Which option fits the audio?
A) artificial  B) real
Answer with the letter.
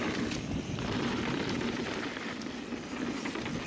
A